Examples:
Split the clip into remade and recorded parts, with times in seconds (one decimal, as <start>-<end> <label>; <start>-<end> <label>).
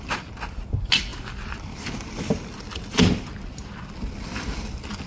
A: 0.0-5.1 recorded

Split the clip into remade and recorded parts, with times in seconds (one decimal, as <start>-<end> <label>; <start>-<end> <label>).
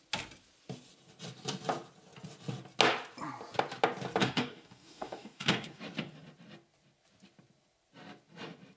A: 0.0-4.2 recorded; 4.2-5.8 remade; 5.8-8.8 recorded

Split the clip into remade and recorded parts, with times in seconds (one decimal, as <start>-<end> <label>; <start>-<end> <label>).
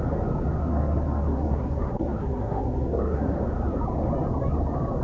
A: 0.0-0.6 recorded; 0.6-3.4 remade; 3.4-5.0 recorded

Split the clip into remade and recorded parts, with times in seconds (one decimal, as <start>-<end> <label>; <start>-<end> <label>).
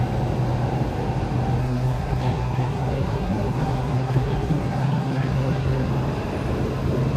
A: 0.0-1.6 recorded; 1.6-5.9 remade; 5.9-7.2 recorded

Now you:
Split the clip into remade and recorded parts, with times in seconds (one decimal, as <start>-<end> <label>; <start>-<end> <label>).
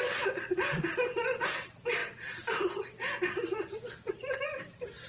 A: 0.0-5.1 recorded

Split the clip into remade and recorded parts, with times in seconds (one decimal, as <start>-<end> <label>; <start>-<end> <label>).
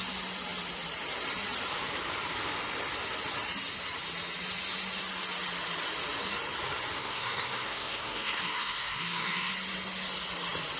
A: 0.0-7.0 recorded; 7.0-9.5 remade; 9.5-10.8 recorded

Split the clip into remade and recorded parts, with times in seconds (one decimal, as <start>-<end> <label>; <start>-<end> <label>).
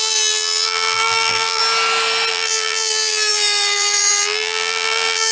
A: 0.0-1.6 remade; 1.6-2.3 recorded; 2.3-5.3 remade